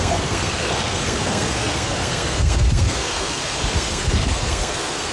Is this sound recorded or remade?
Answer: remade